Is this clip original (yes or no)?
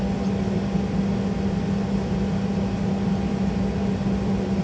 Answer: yes